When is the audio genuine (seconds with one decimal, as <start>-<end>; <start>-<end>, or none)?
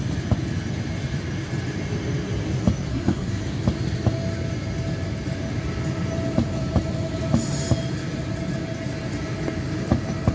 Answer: 0.0-2.9; 3.4-10.3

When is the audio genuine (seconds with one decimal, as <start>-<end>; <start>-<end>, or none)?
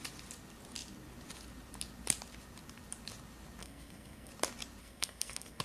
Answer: 0.0-3.6; 4.3-4.8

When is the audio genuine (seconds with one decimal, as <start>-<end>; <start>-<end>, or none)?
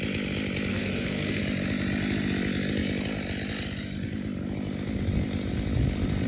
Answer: 0.0-0.7; 1.4-6.3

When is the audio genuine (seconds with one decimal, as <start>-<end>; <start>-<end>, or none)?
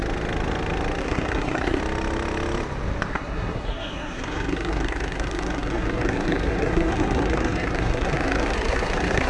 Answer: 0.0-1.0; 1.8-3.1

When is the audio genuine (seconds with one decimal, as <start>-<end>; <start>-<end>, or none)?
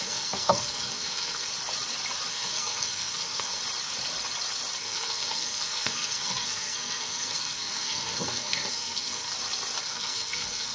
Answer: 1.5-2.3; 3.6-4.8; 9.3-9.8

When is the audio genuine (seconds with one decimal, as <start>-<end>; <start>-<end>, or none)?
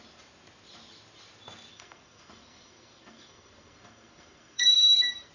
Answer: 0.0-1.7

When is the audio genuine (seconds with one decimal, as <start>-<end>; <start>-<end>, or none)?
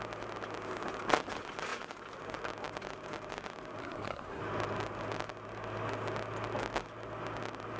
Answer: 0.0-3.8; 4.4-7.8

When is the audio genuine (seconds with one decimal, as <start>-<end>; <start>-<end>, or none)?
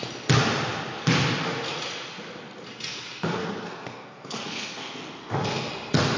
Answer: 0.0-3.4; 5.7-6.2